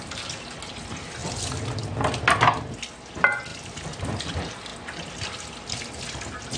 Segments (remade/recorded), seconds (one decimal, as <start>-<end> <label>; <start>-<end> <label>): 0.0-6.6 recorded

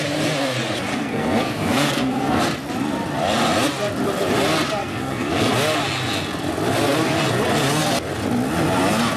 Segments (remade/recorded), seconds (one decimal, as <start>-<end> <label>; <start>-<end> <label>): 0.0-0.9 recorded; 0.9-2.4 remade; 2.4-4.8 recorded; 4.8-5.5 remade; 5.5-9.2 recorded

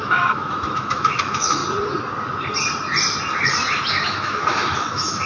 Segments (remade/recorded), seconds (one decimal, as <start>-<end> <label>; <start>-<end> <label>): 0.0-1.6 remade; 1.6-3.9 recorded; 3.9-5.3 remade

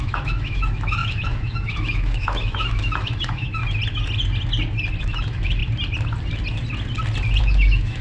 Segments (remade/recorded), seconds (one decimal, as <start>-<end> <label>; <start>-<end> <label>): 0.0-3.6 remade; 3.6-5.0 recorded; 5.0-5.6 remade; 5.6-7.4 recorded; 7.4-8.0 remade

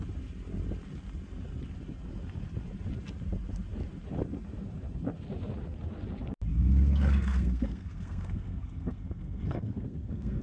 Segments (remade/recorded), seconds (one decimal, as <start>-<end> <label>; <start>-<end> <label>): 0.0-6.5 recorded; 6.5-10.4 remade

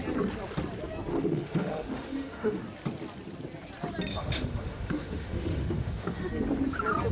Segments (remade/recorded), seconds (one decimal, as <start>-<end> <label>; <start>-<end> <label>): 0.0-1.1 recorded; 1.1-2.6 remade; 2.6-4.1 recorded; 4.1-6.3 remade; 6.3-7.1 recorded